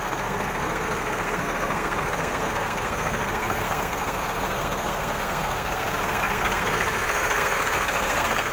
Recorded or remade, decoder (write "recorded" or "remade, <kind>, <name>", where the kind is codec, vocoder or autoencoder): remade, codec, SNAC